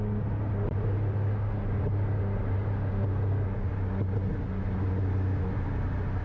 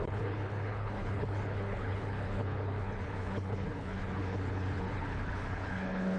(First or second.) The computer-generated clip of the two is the second